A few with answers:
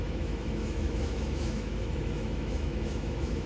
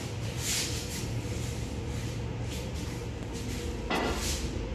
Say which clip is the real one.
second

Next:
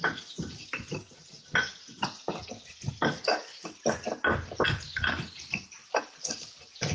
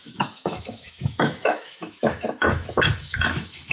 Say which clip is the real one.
first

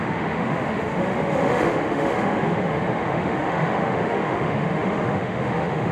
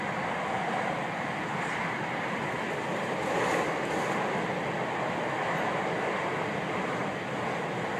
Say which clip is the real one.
second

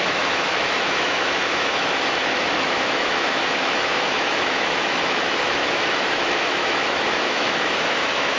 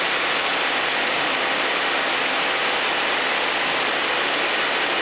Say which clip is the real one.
second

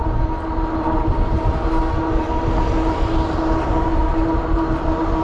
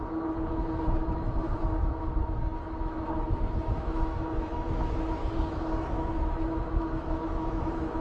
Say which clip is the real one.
first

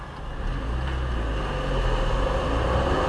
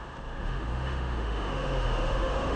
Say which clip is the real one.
first